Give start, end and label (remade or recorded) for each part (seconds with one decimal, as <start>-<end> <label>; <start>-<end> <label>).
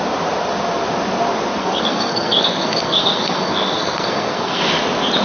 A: 0.0-1.6 recorded; 1.6-4.7 remade; 4.7-5.2 recorded